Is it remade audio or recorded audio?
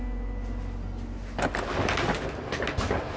recorded